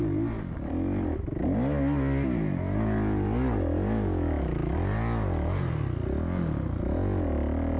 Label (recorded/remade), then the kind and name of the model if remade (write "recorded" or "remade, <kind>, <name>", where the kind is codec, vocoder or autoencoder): recorded